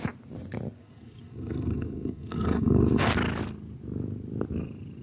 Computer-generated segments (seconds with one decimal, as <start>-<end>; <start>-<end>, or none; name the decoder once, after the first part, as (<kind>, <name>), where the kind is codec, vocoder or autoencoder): 0.8-3.0 (codec, SNAC)